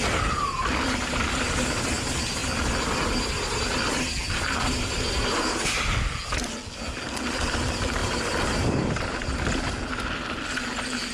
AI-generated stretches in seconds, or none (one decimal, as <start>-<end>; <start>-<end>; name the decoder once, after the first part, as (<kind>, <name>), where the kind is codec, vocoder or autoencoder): none